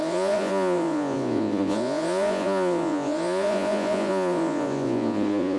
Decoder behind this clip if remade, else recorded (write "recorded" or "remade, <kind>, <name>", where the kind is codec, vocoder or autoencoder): remade, vocoder, Vocos